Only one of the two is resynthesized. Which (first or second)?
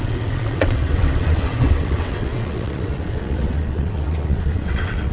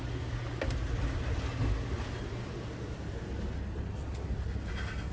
first